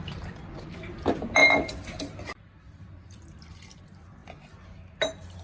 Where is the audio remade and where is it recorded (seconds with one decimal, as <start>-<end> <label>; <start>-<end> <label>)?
0.0-5.4 recorded